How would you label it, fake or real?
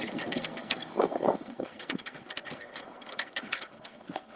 fake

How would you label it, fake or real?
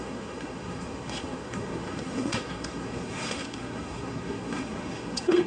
fake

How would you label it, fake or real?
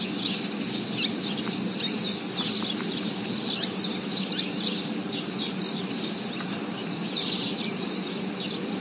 real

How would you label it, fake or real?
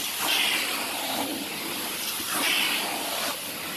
real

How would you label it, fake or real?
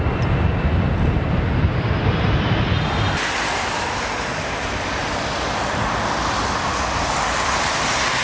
real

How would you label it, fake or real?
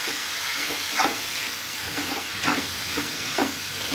fake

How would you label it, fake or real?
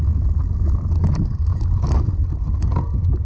real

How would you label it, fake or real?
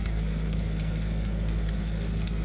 fake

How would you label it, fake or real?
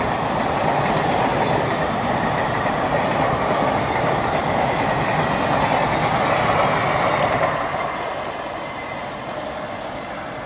real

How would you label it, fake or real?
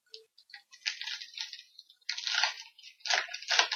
real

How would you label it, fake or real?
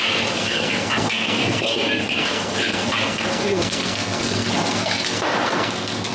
fake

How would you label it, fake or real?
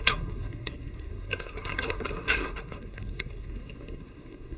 fake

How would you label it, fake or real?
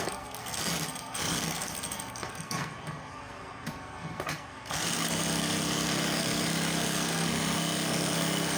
fake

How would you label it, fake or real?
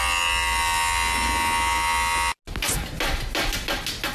real